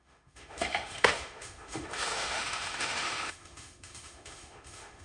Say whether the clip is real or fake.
fake